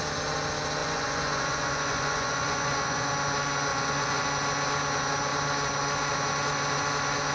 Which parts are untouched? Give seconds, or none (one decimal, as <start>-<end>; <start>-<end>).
0.0-0.8; 3.1-3.7; 4.2-7.3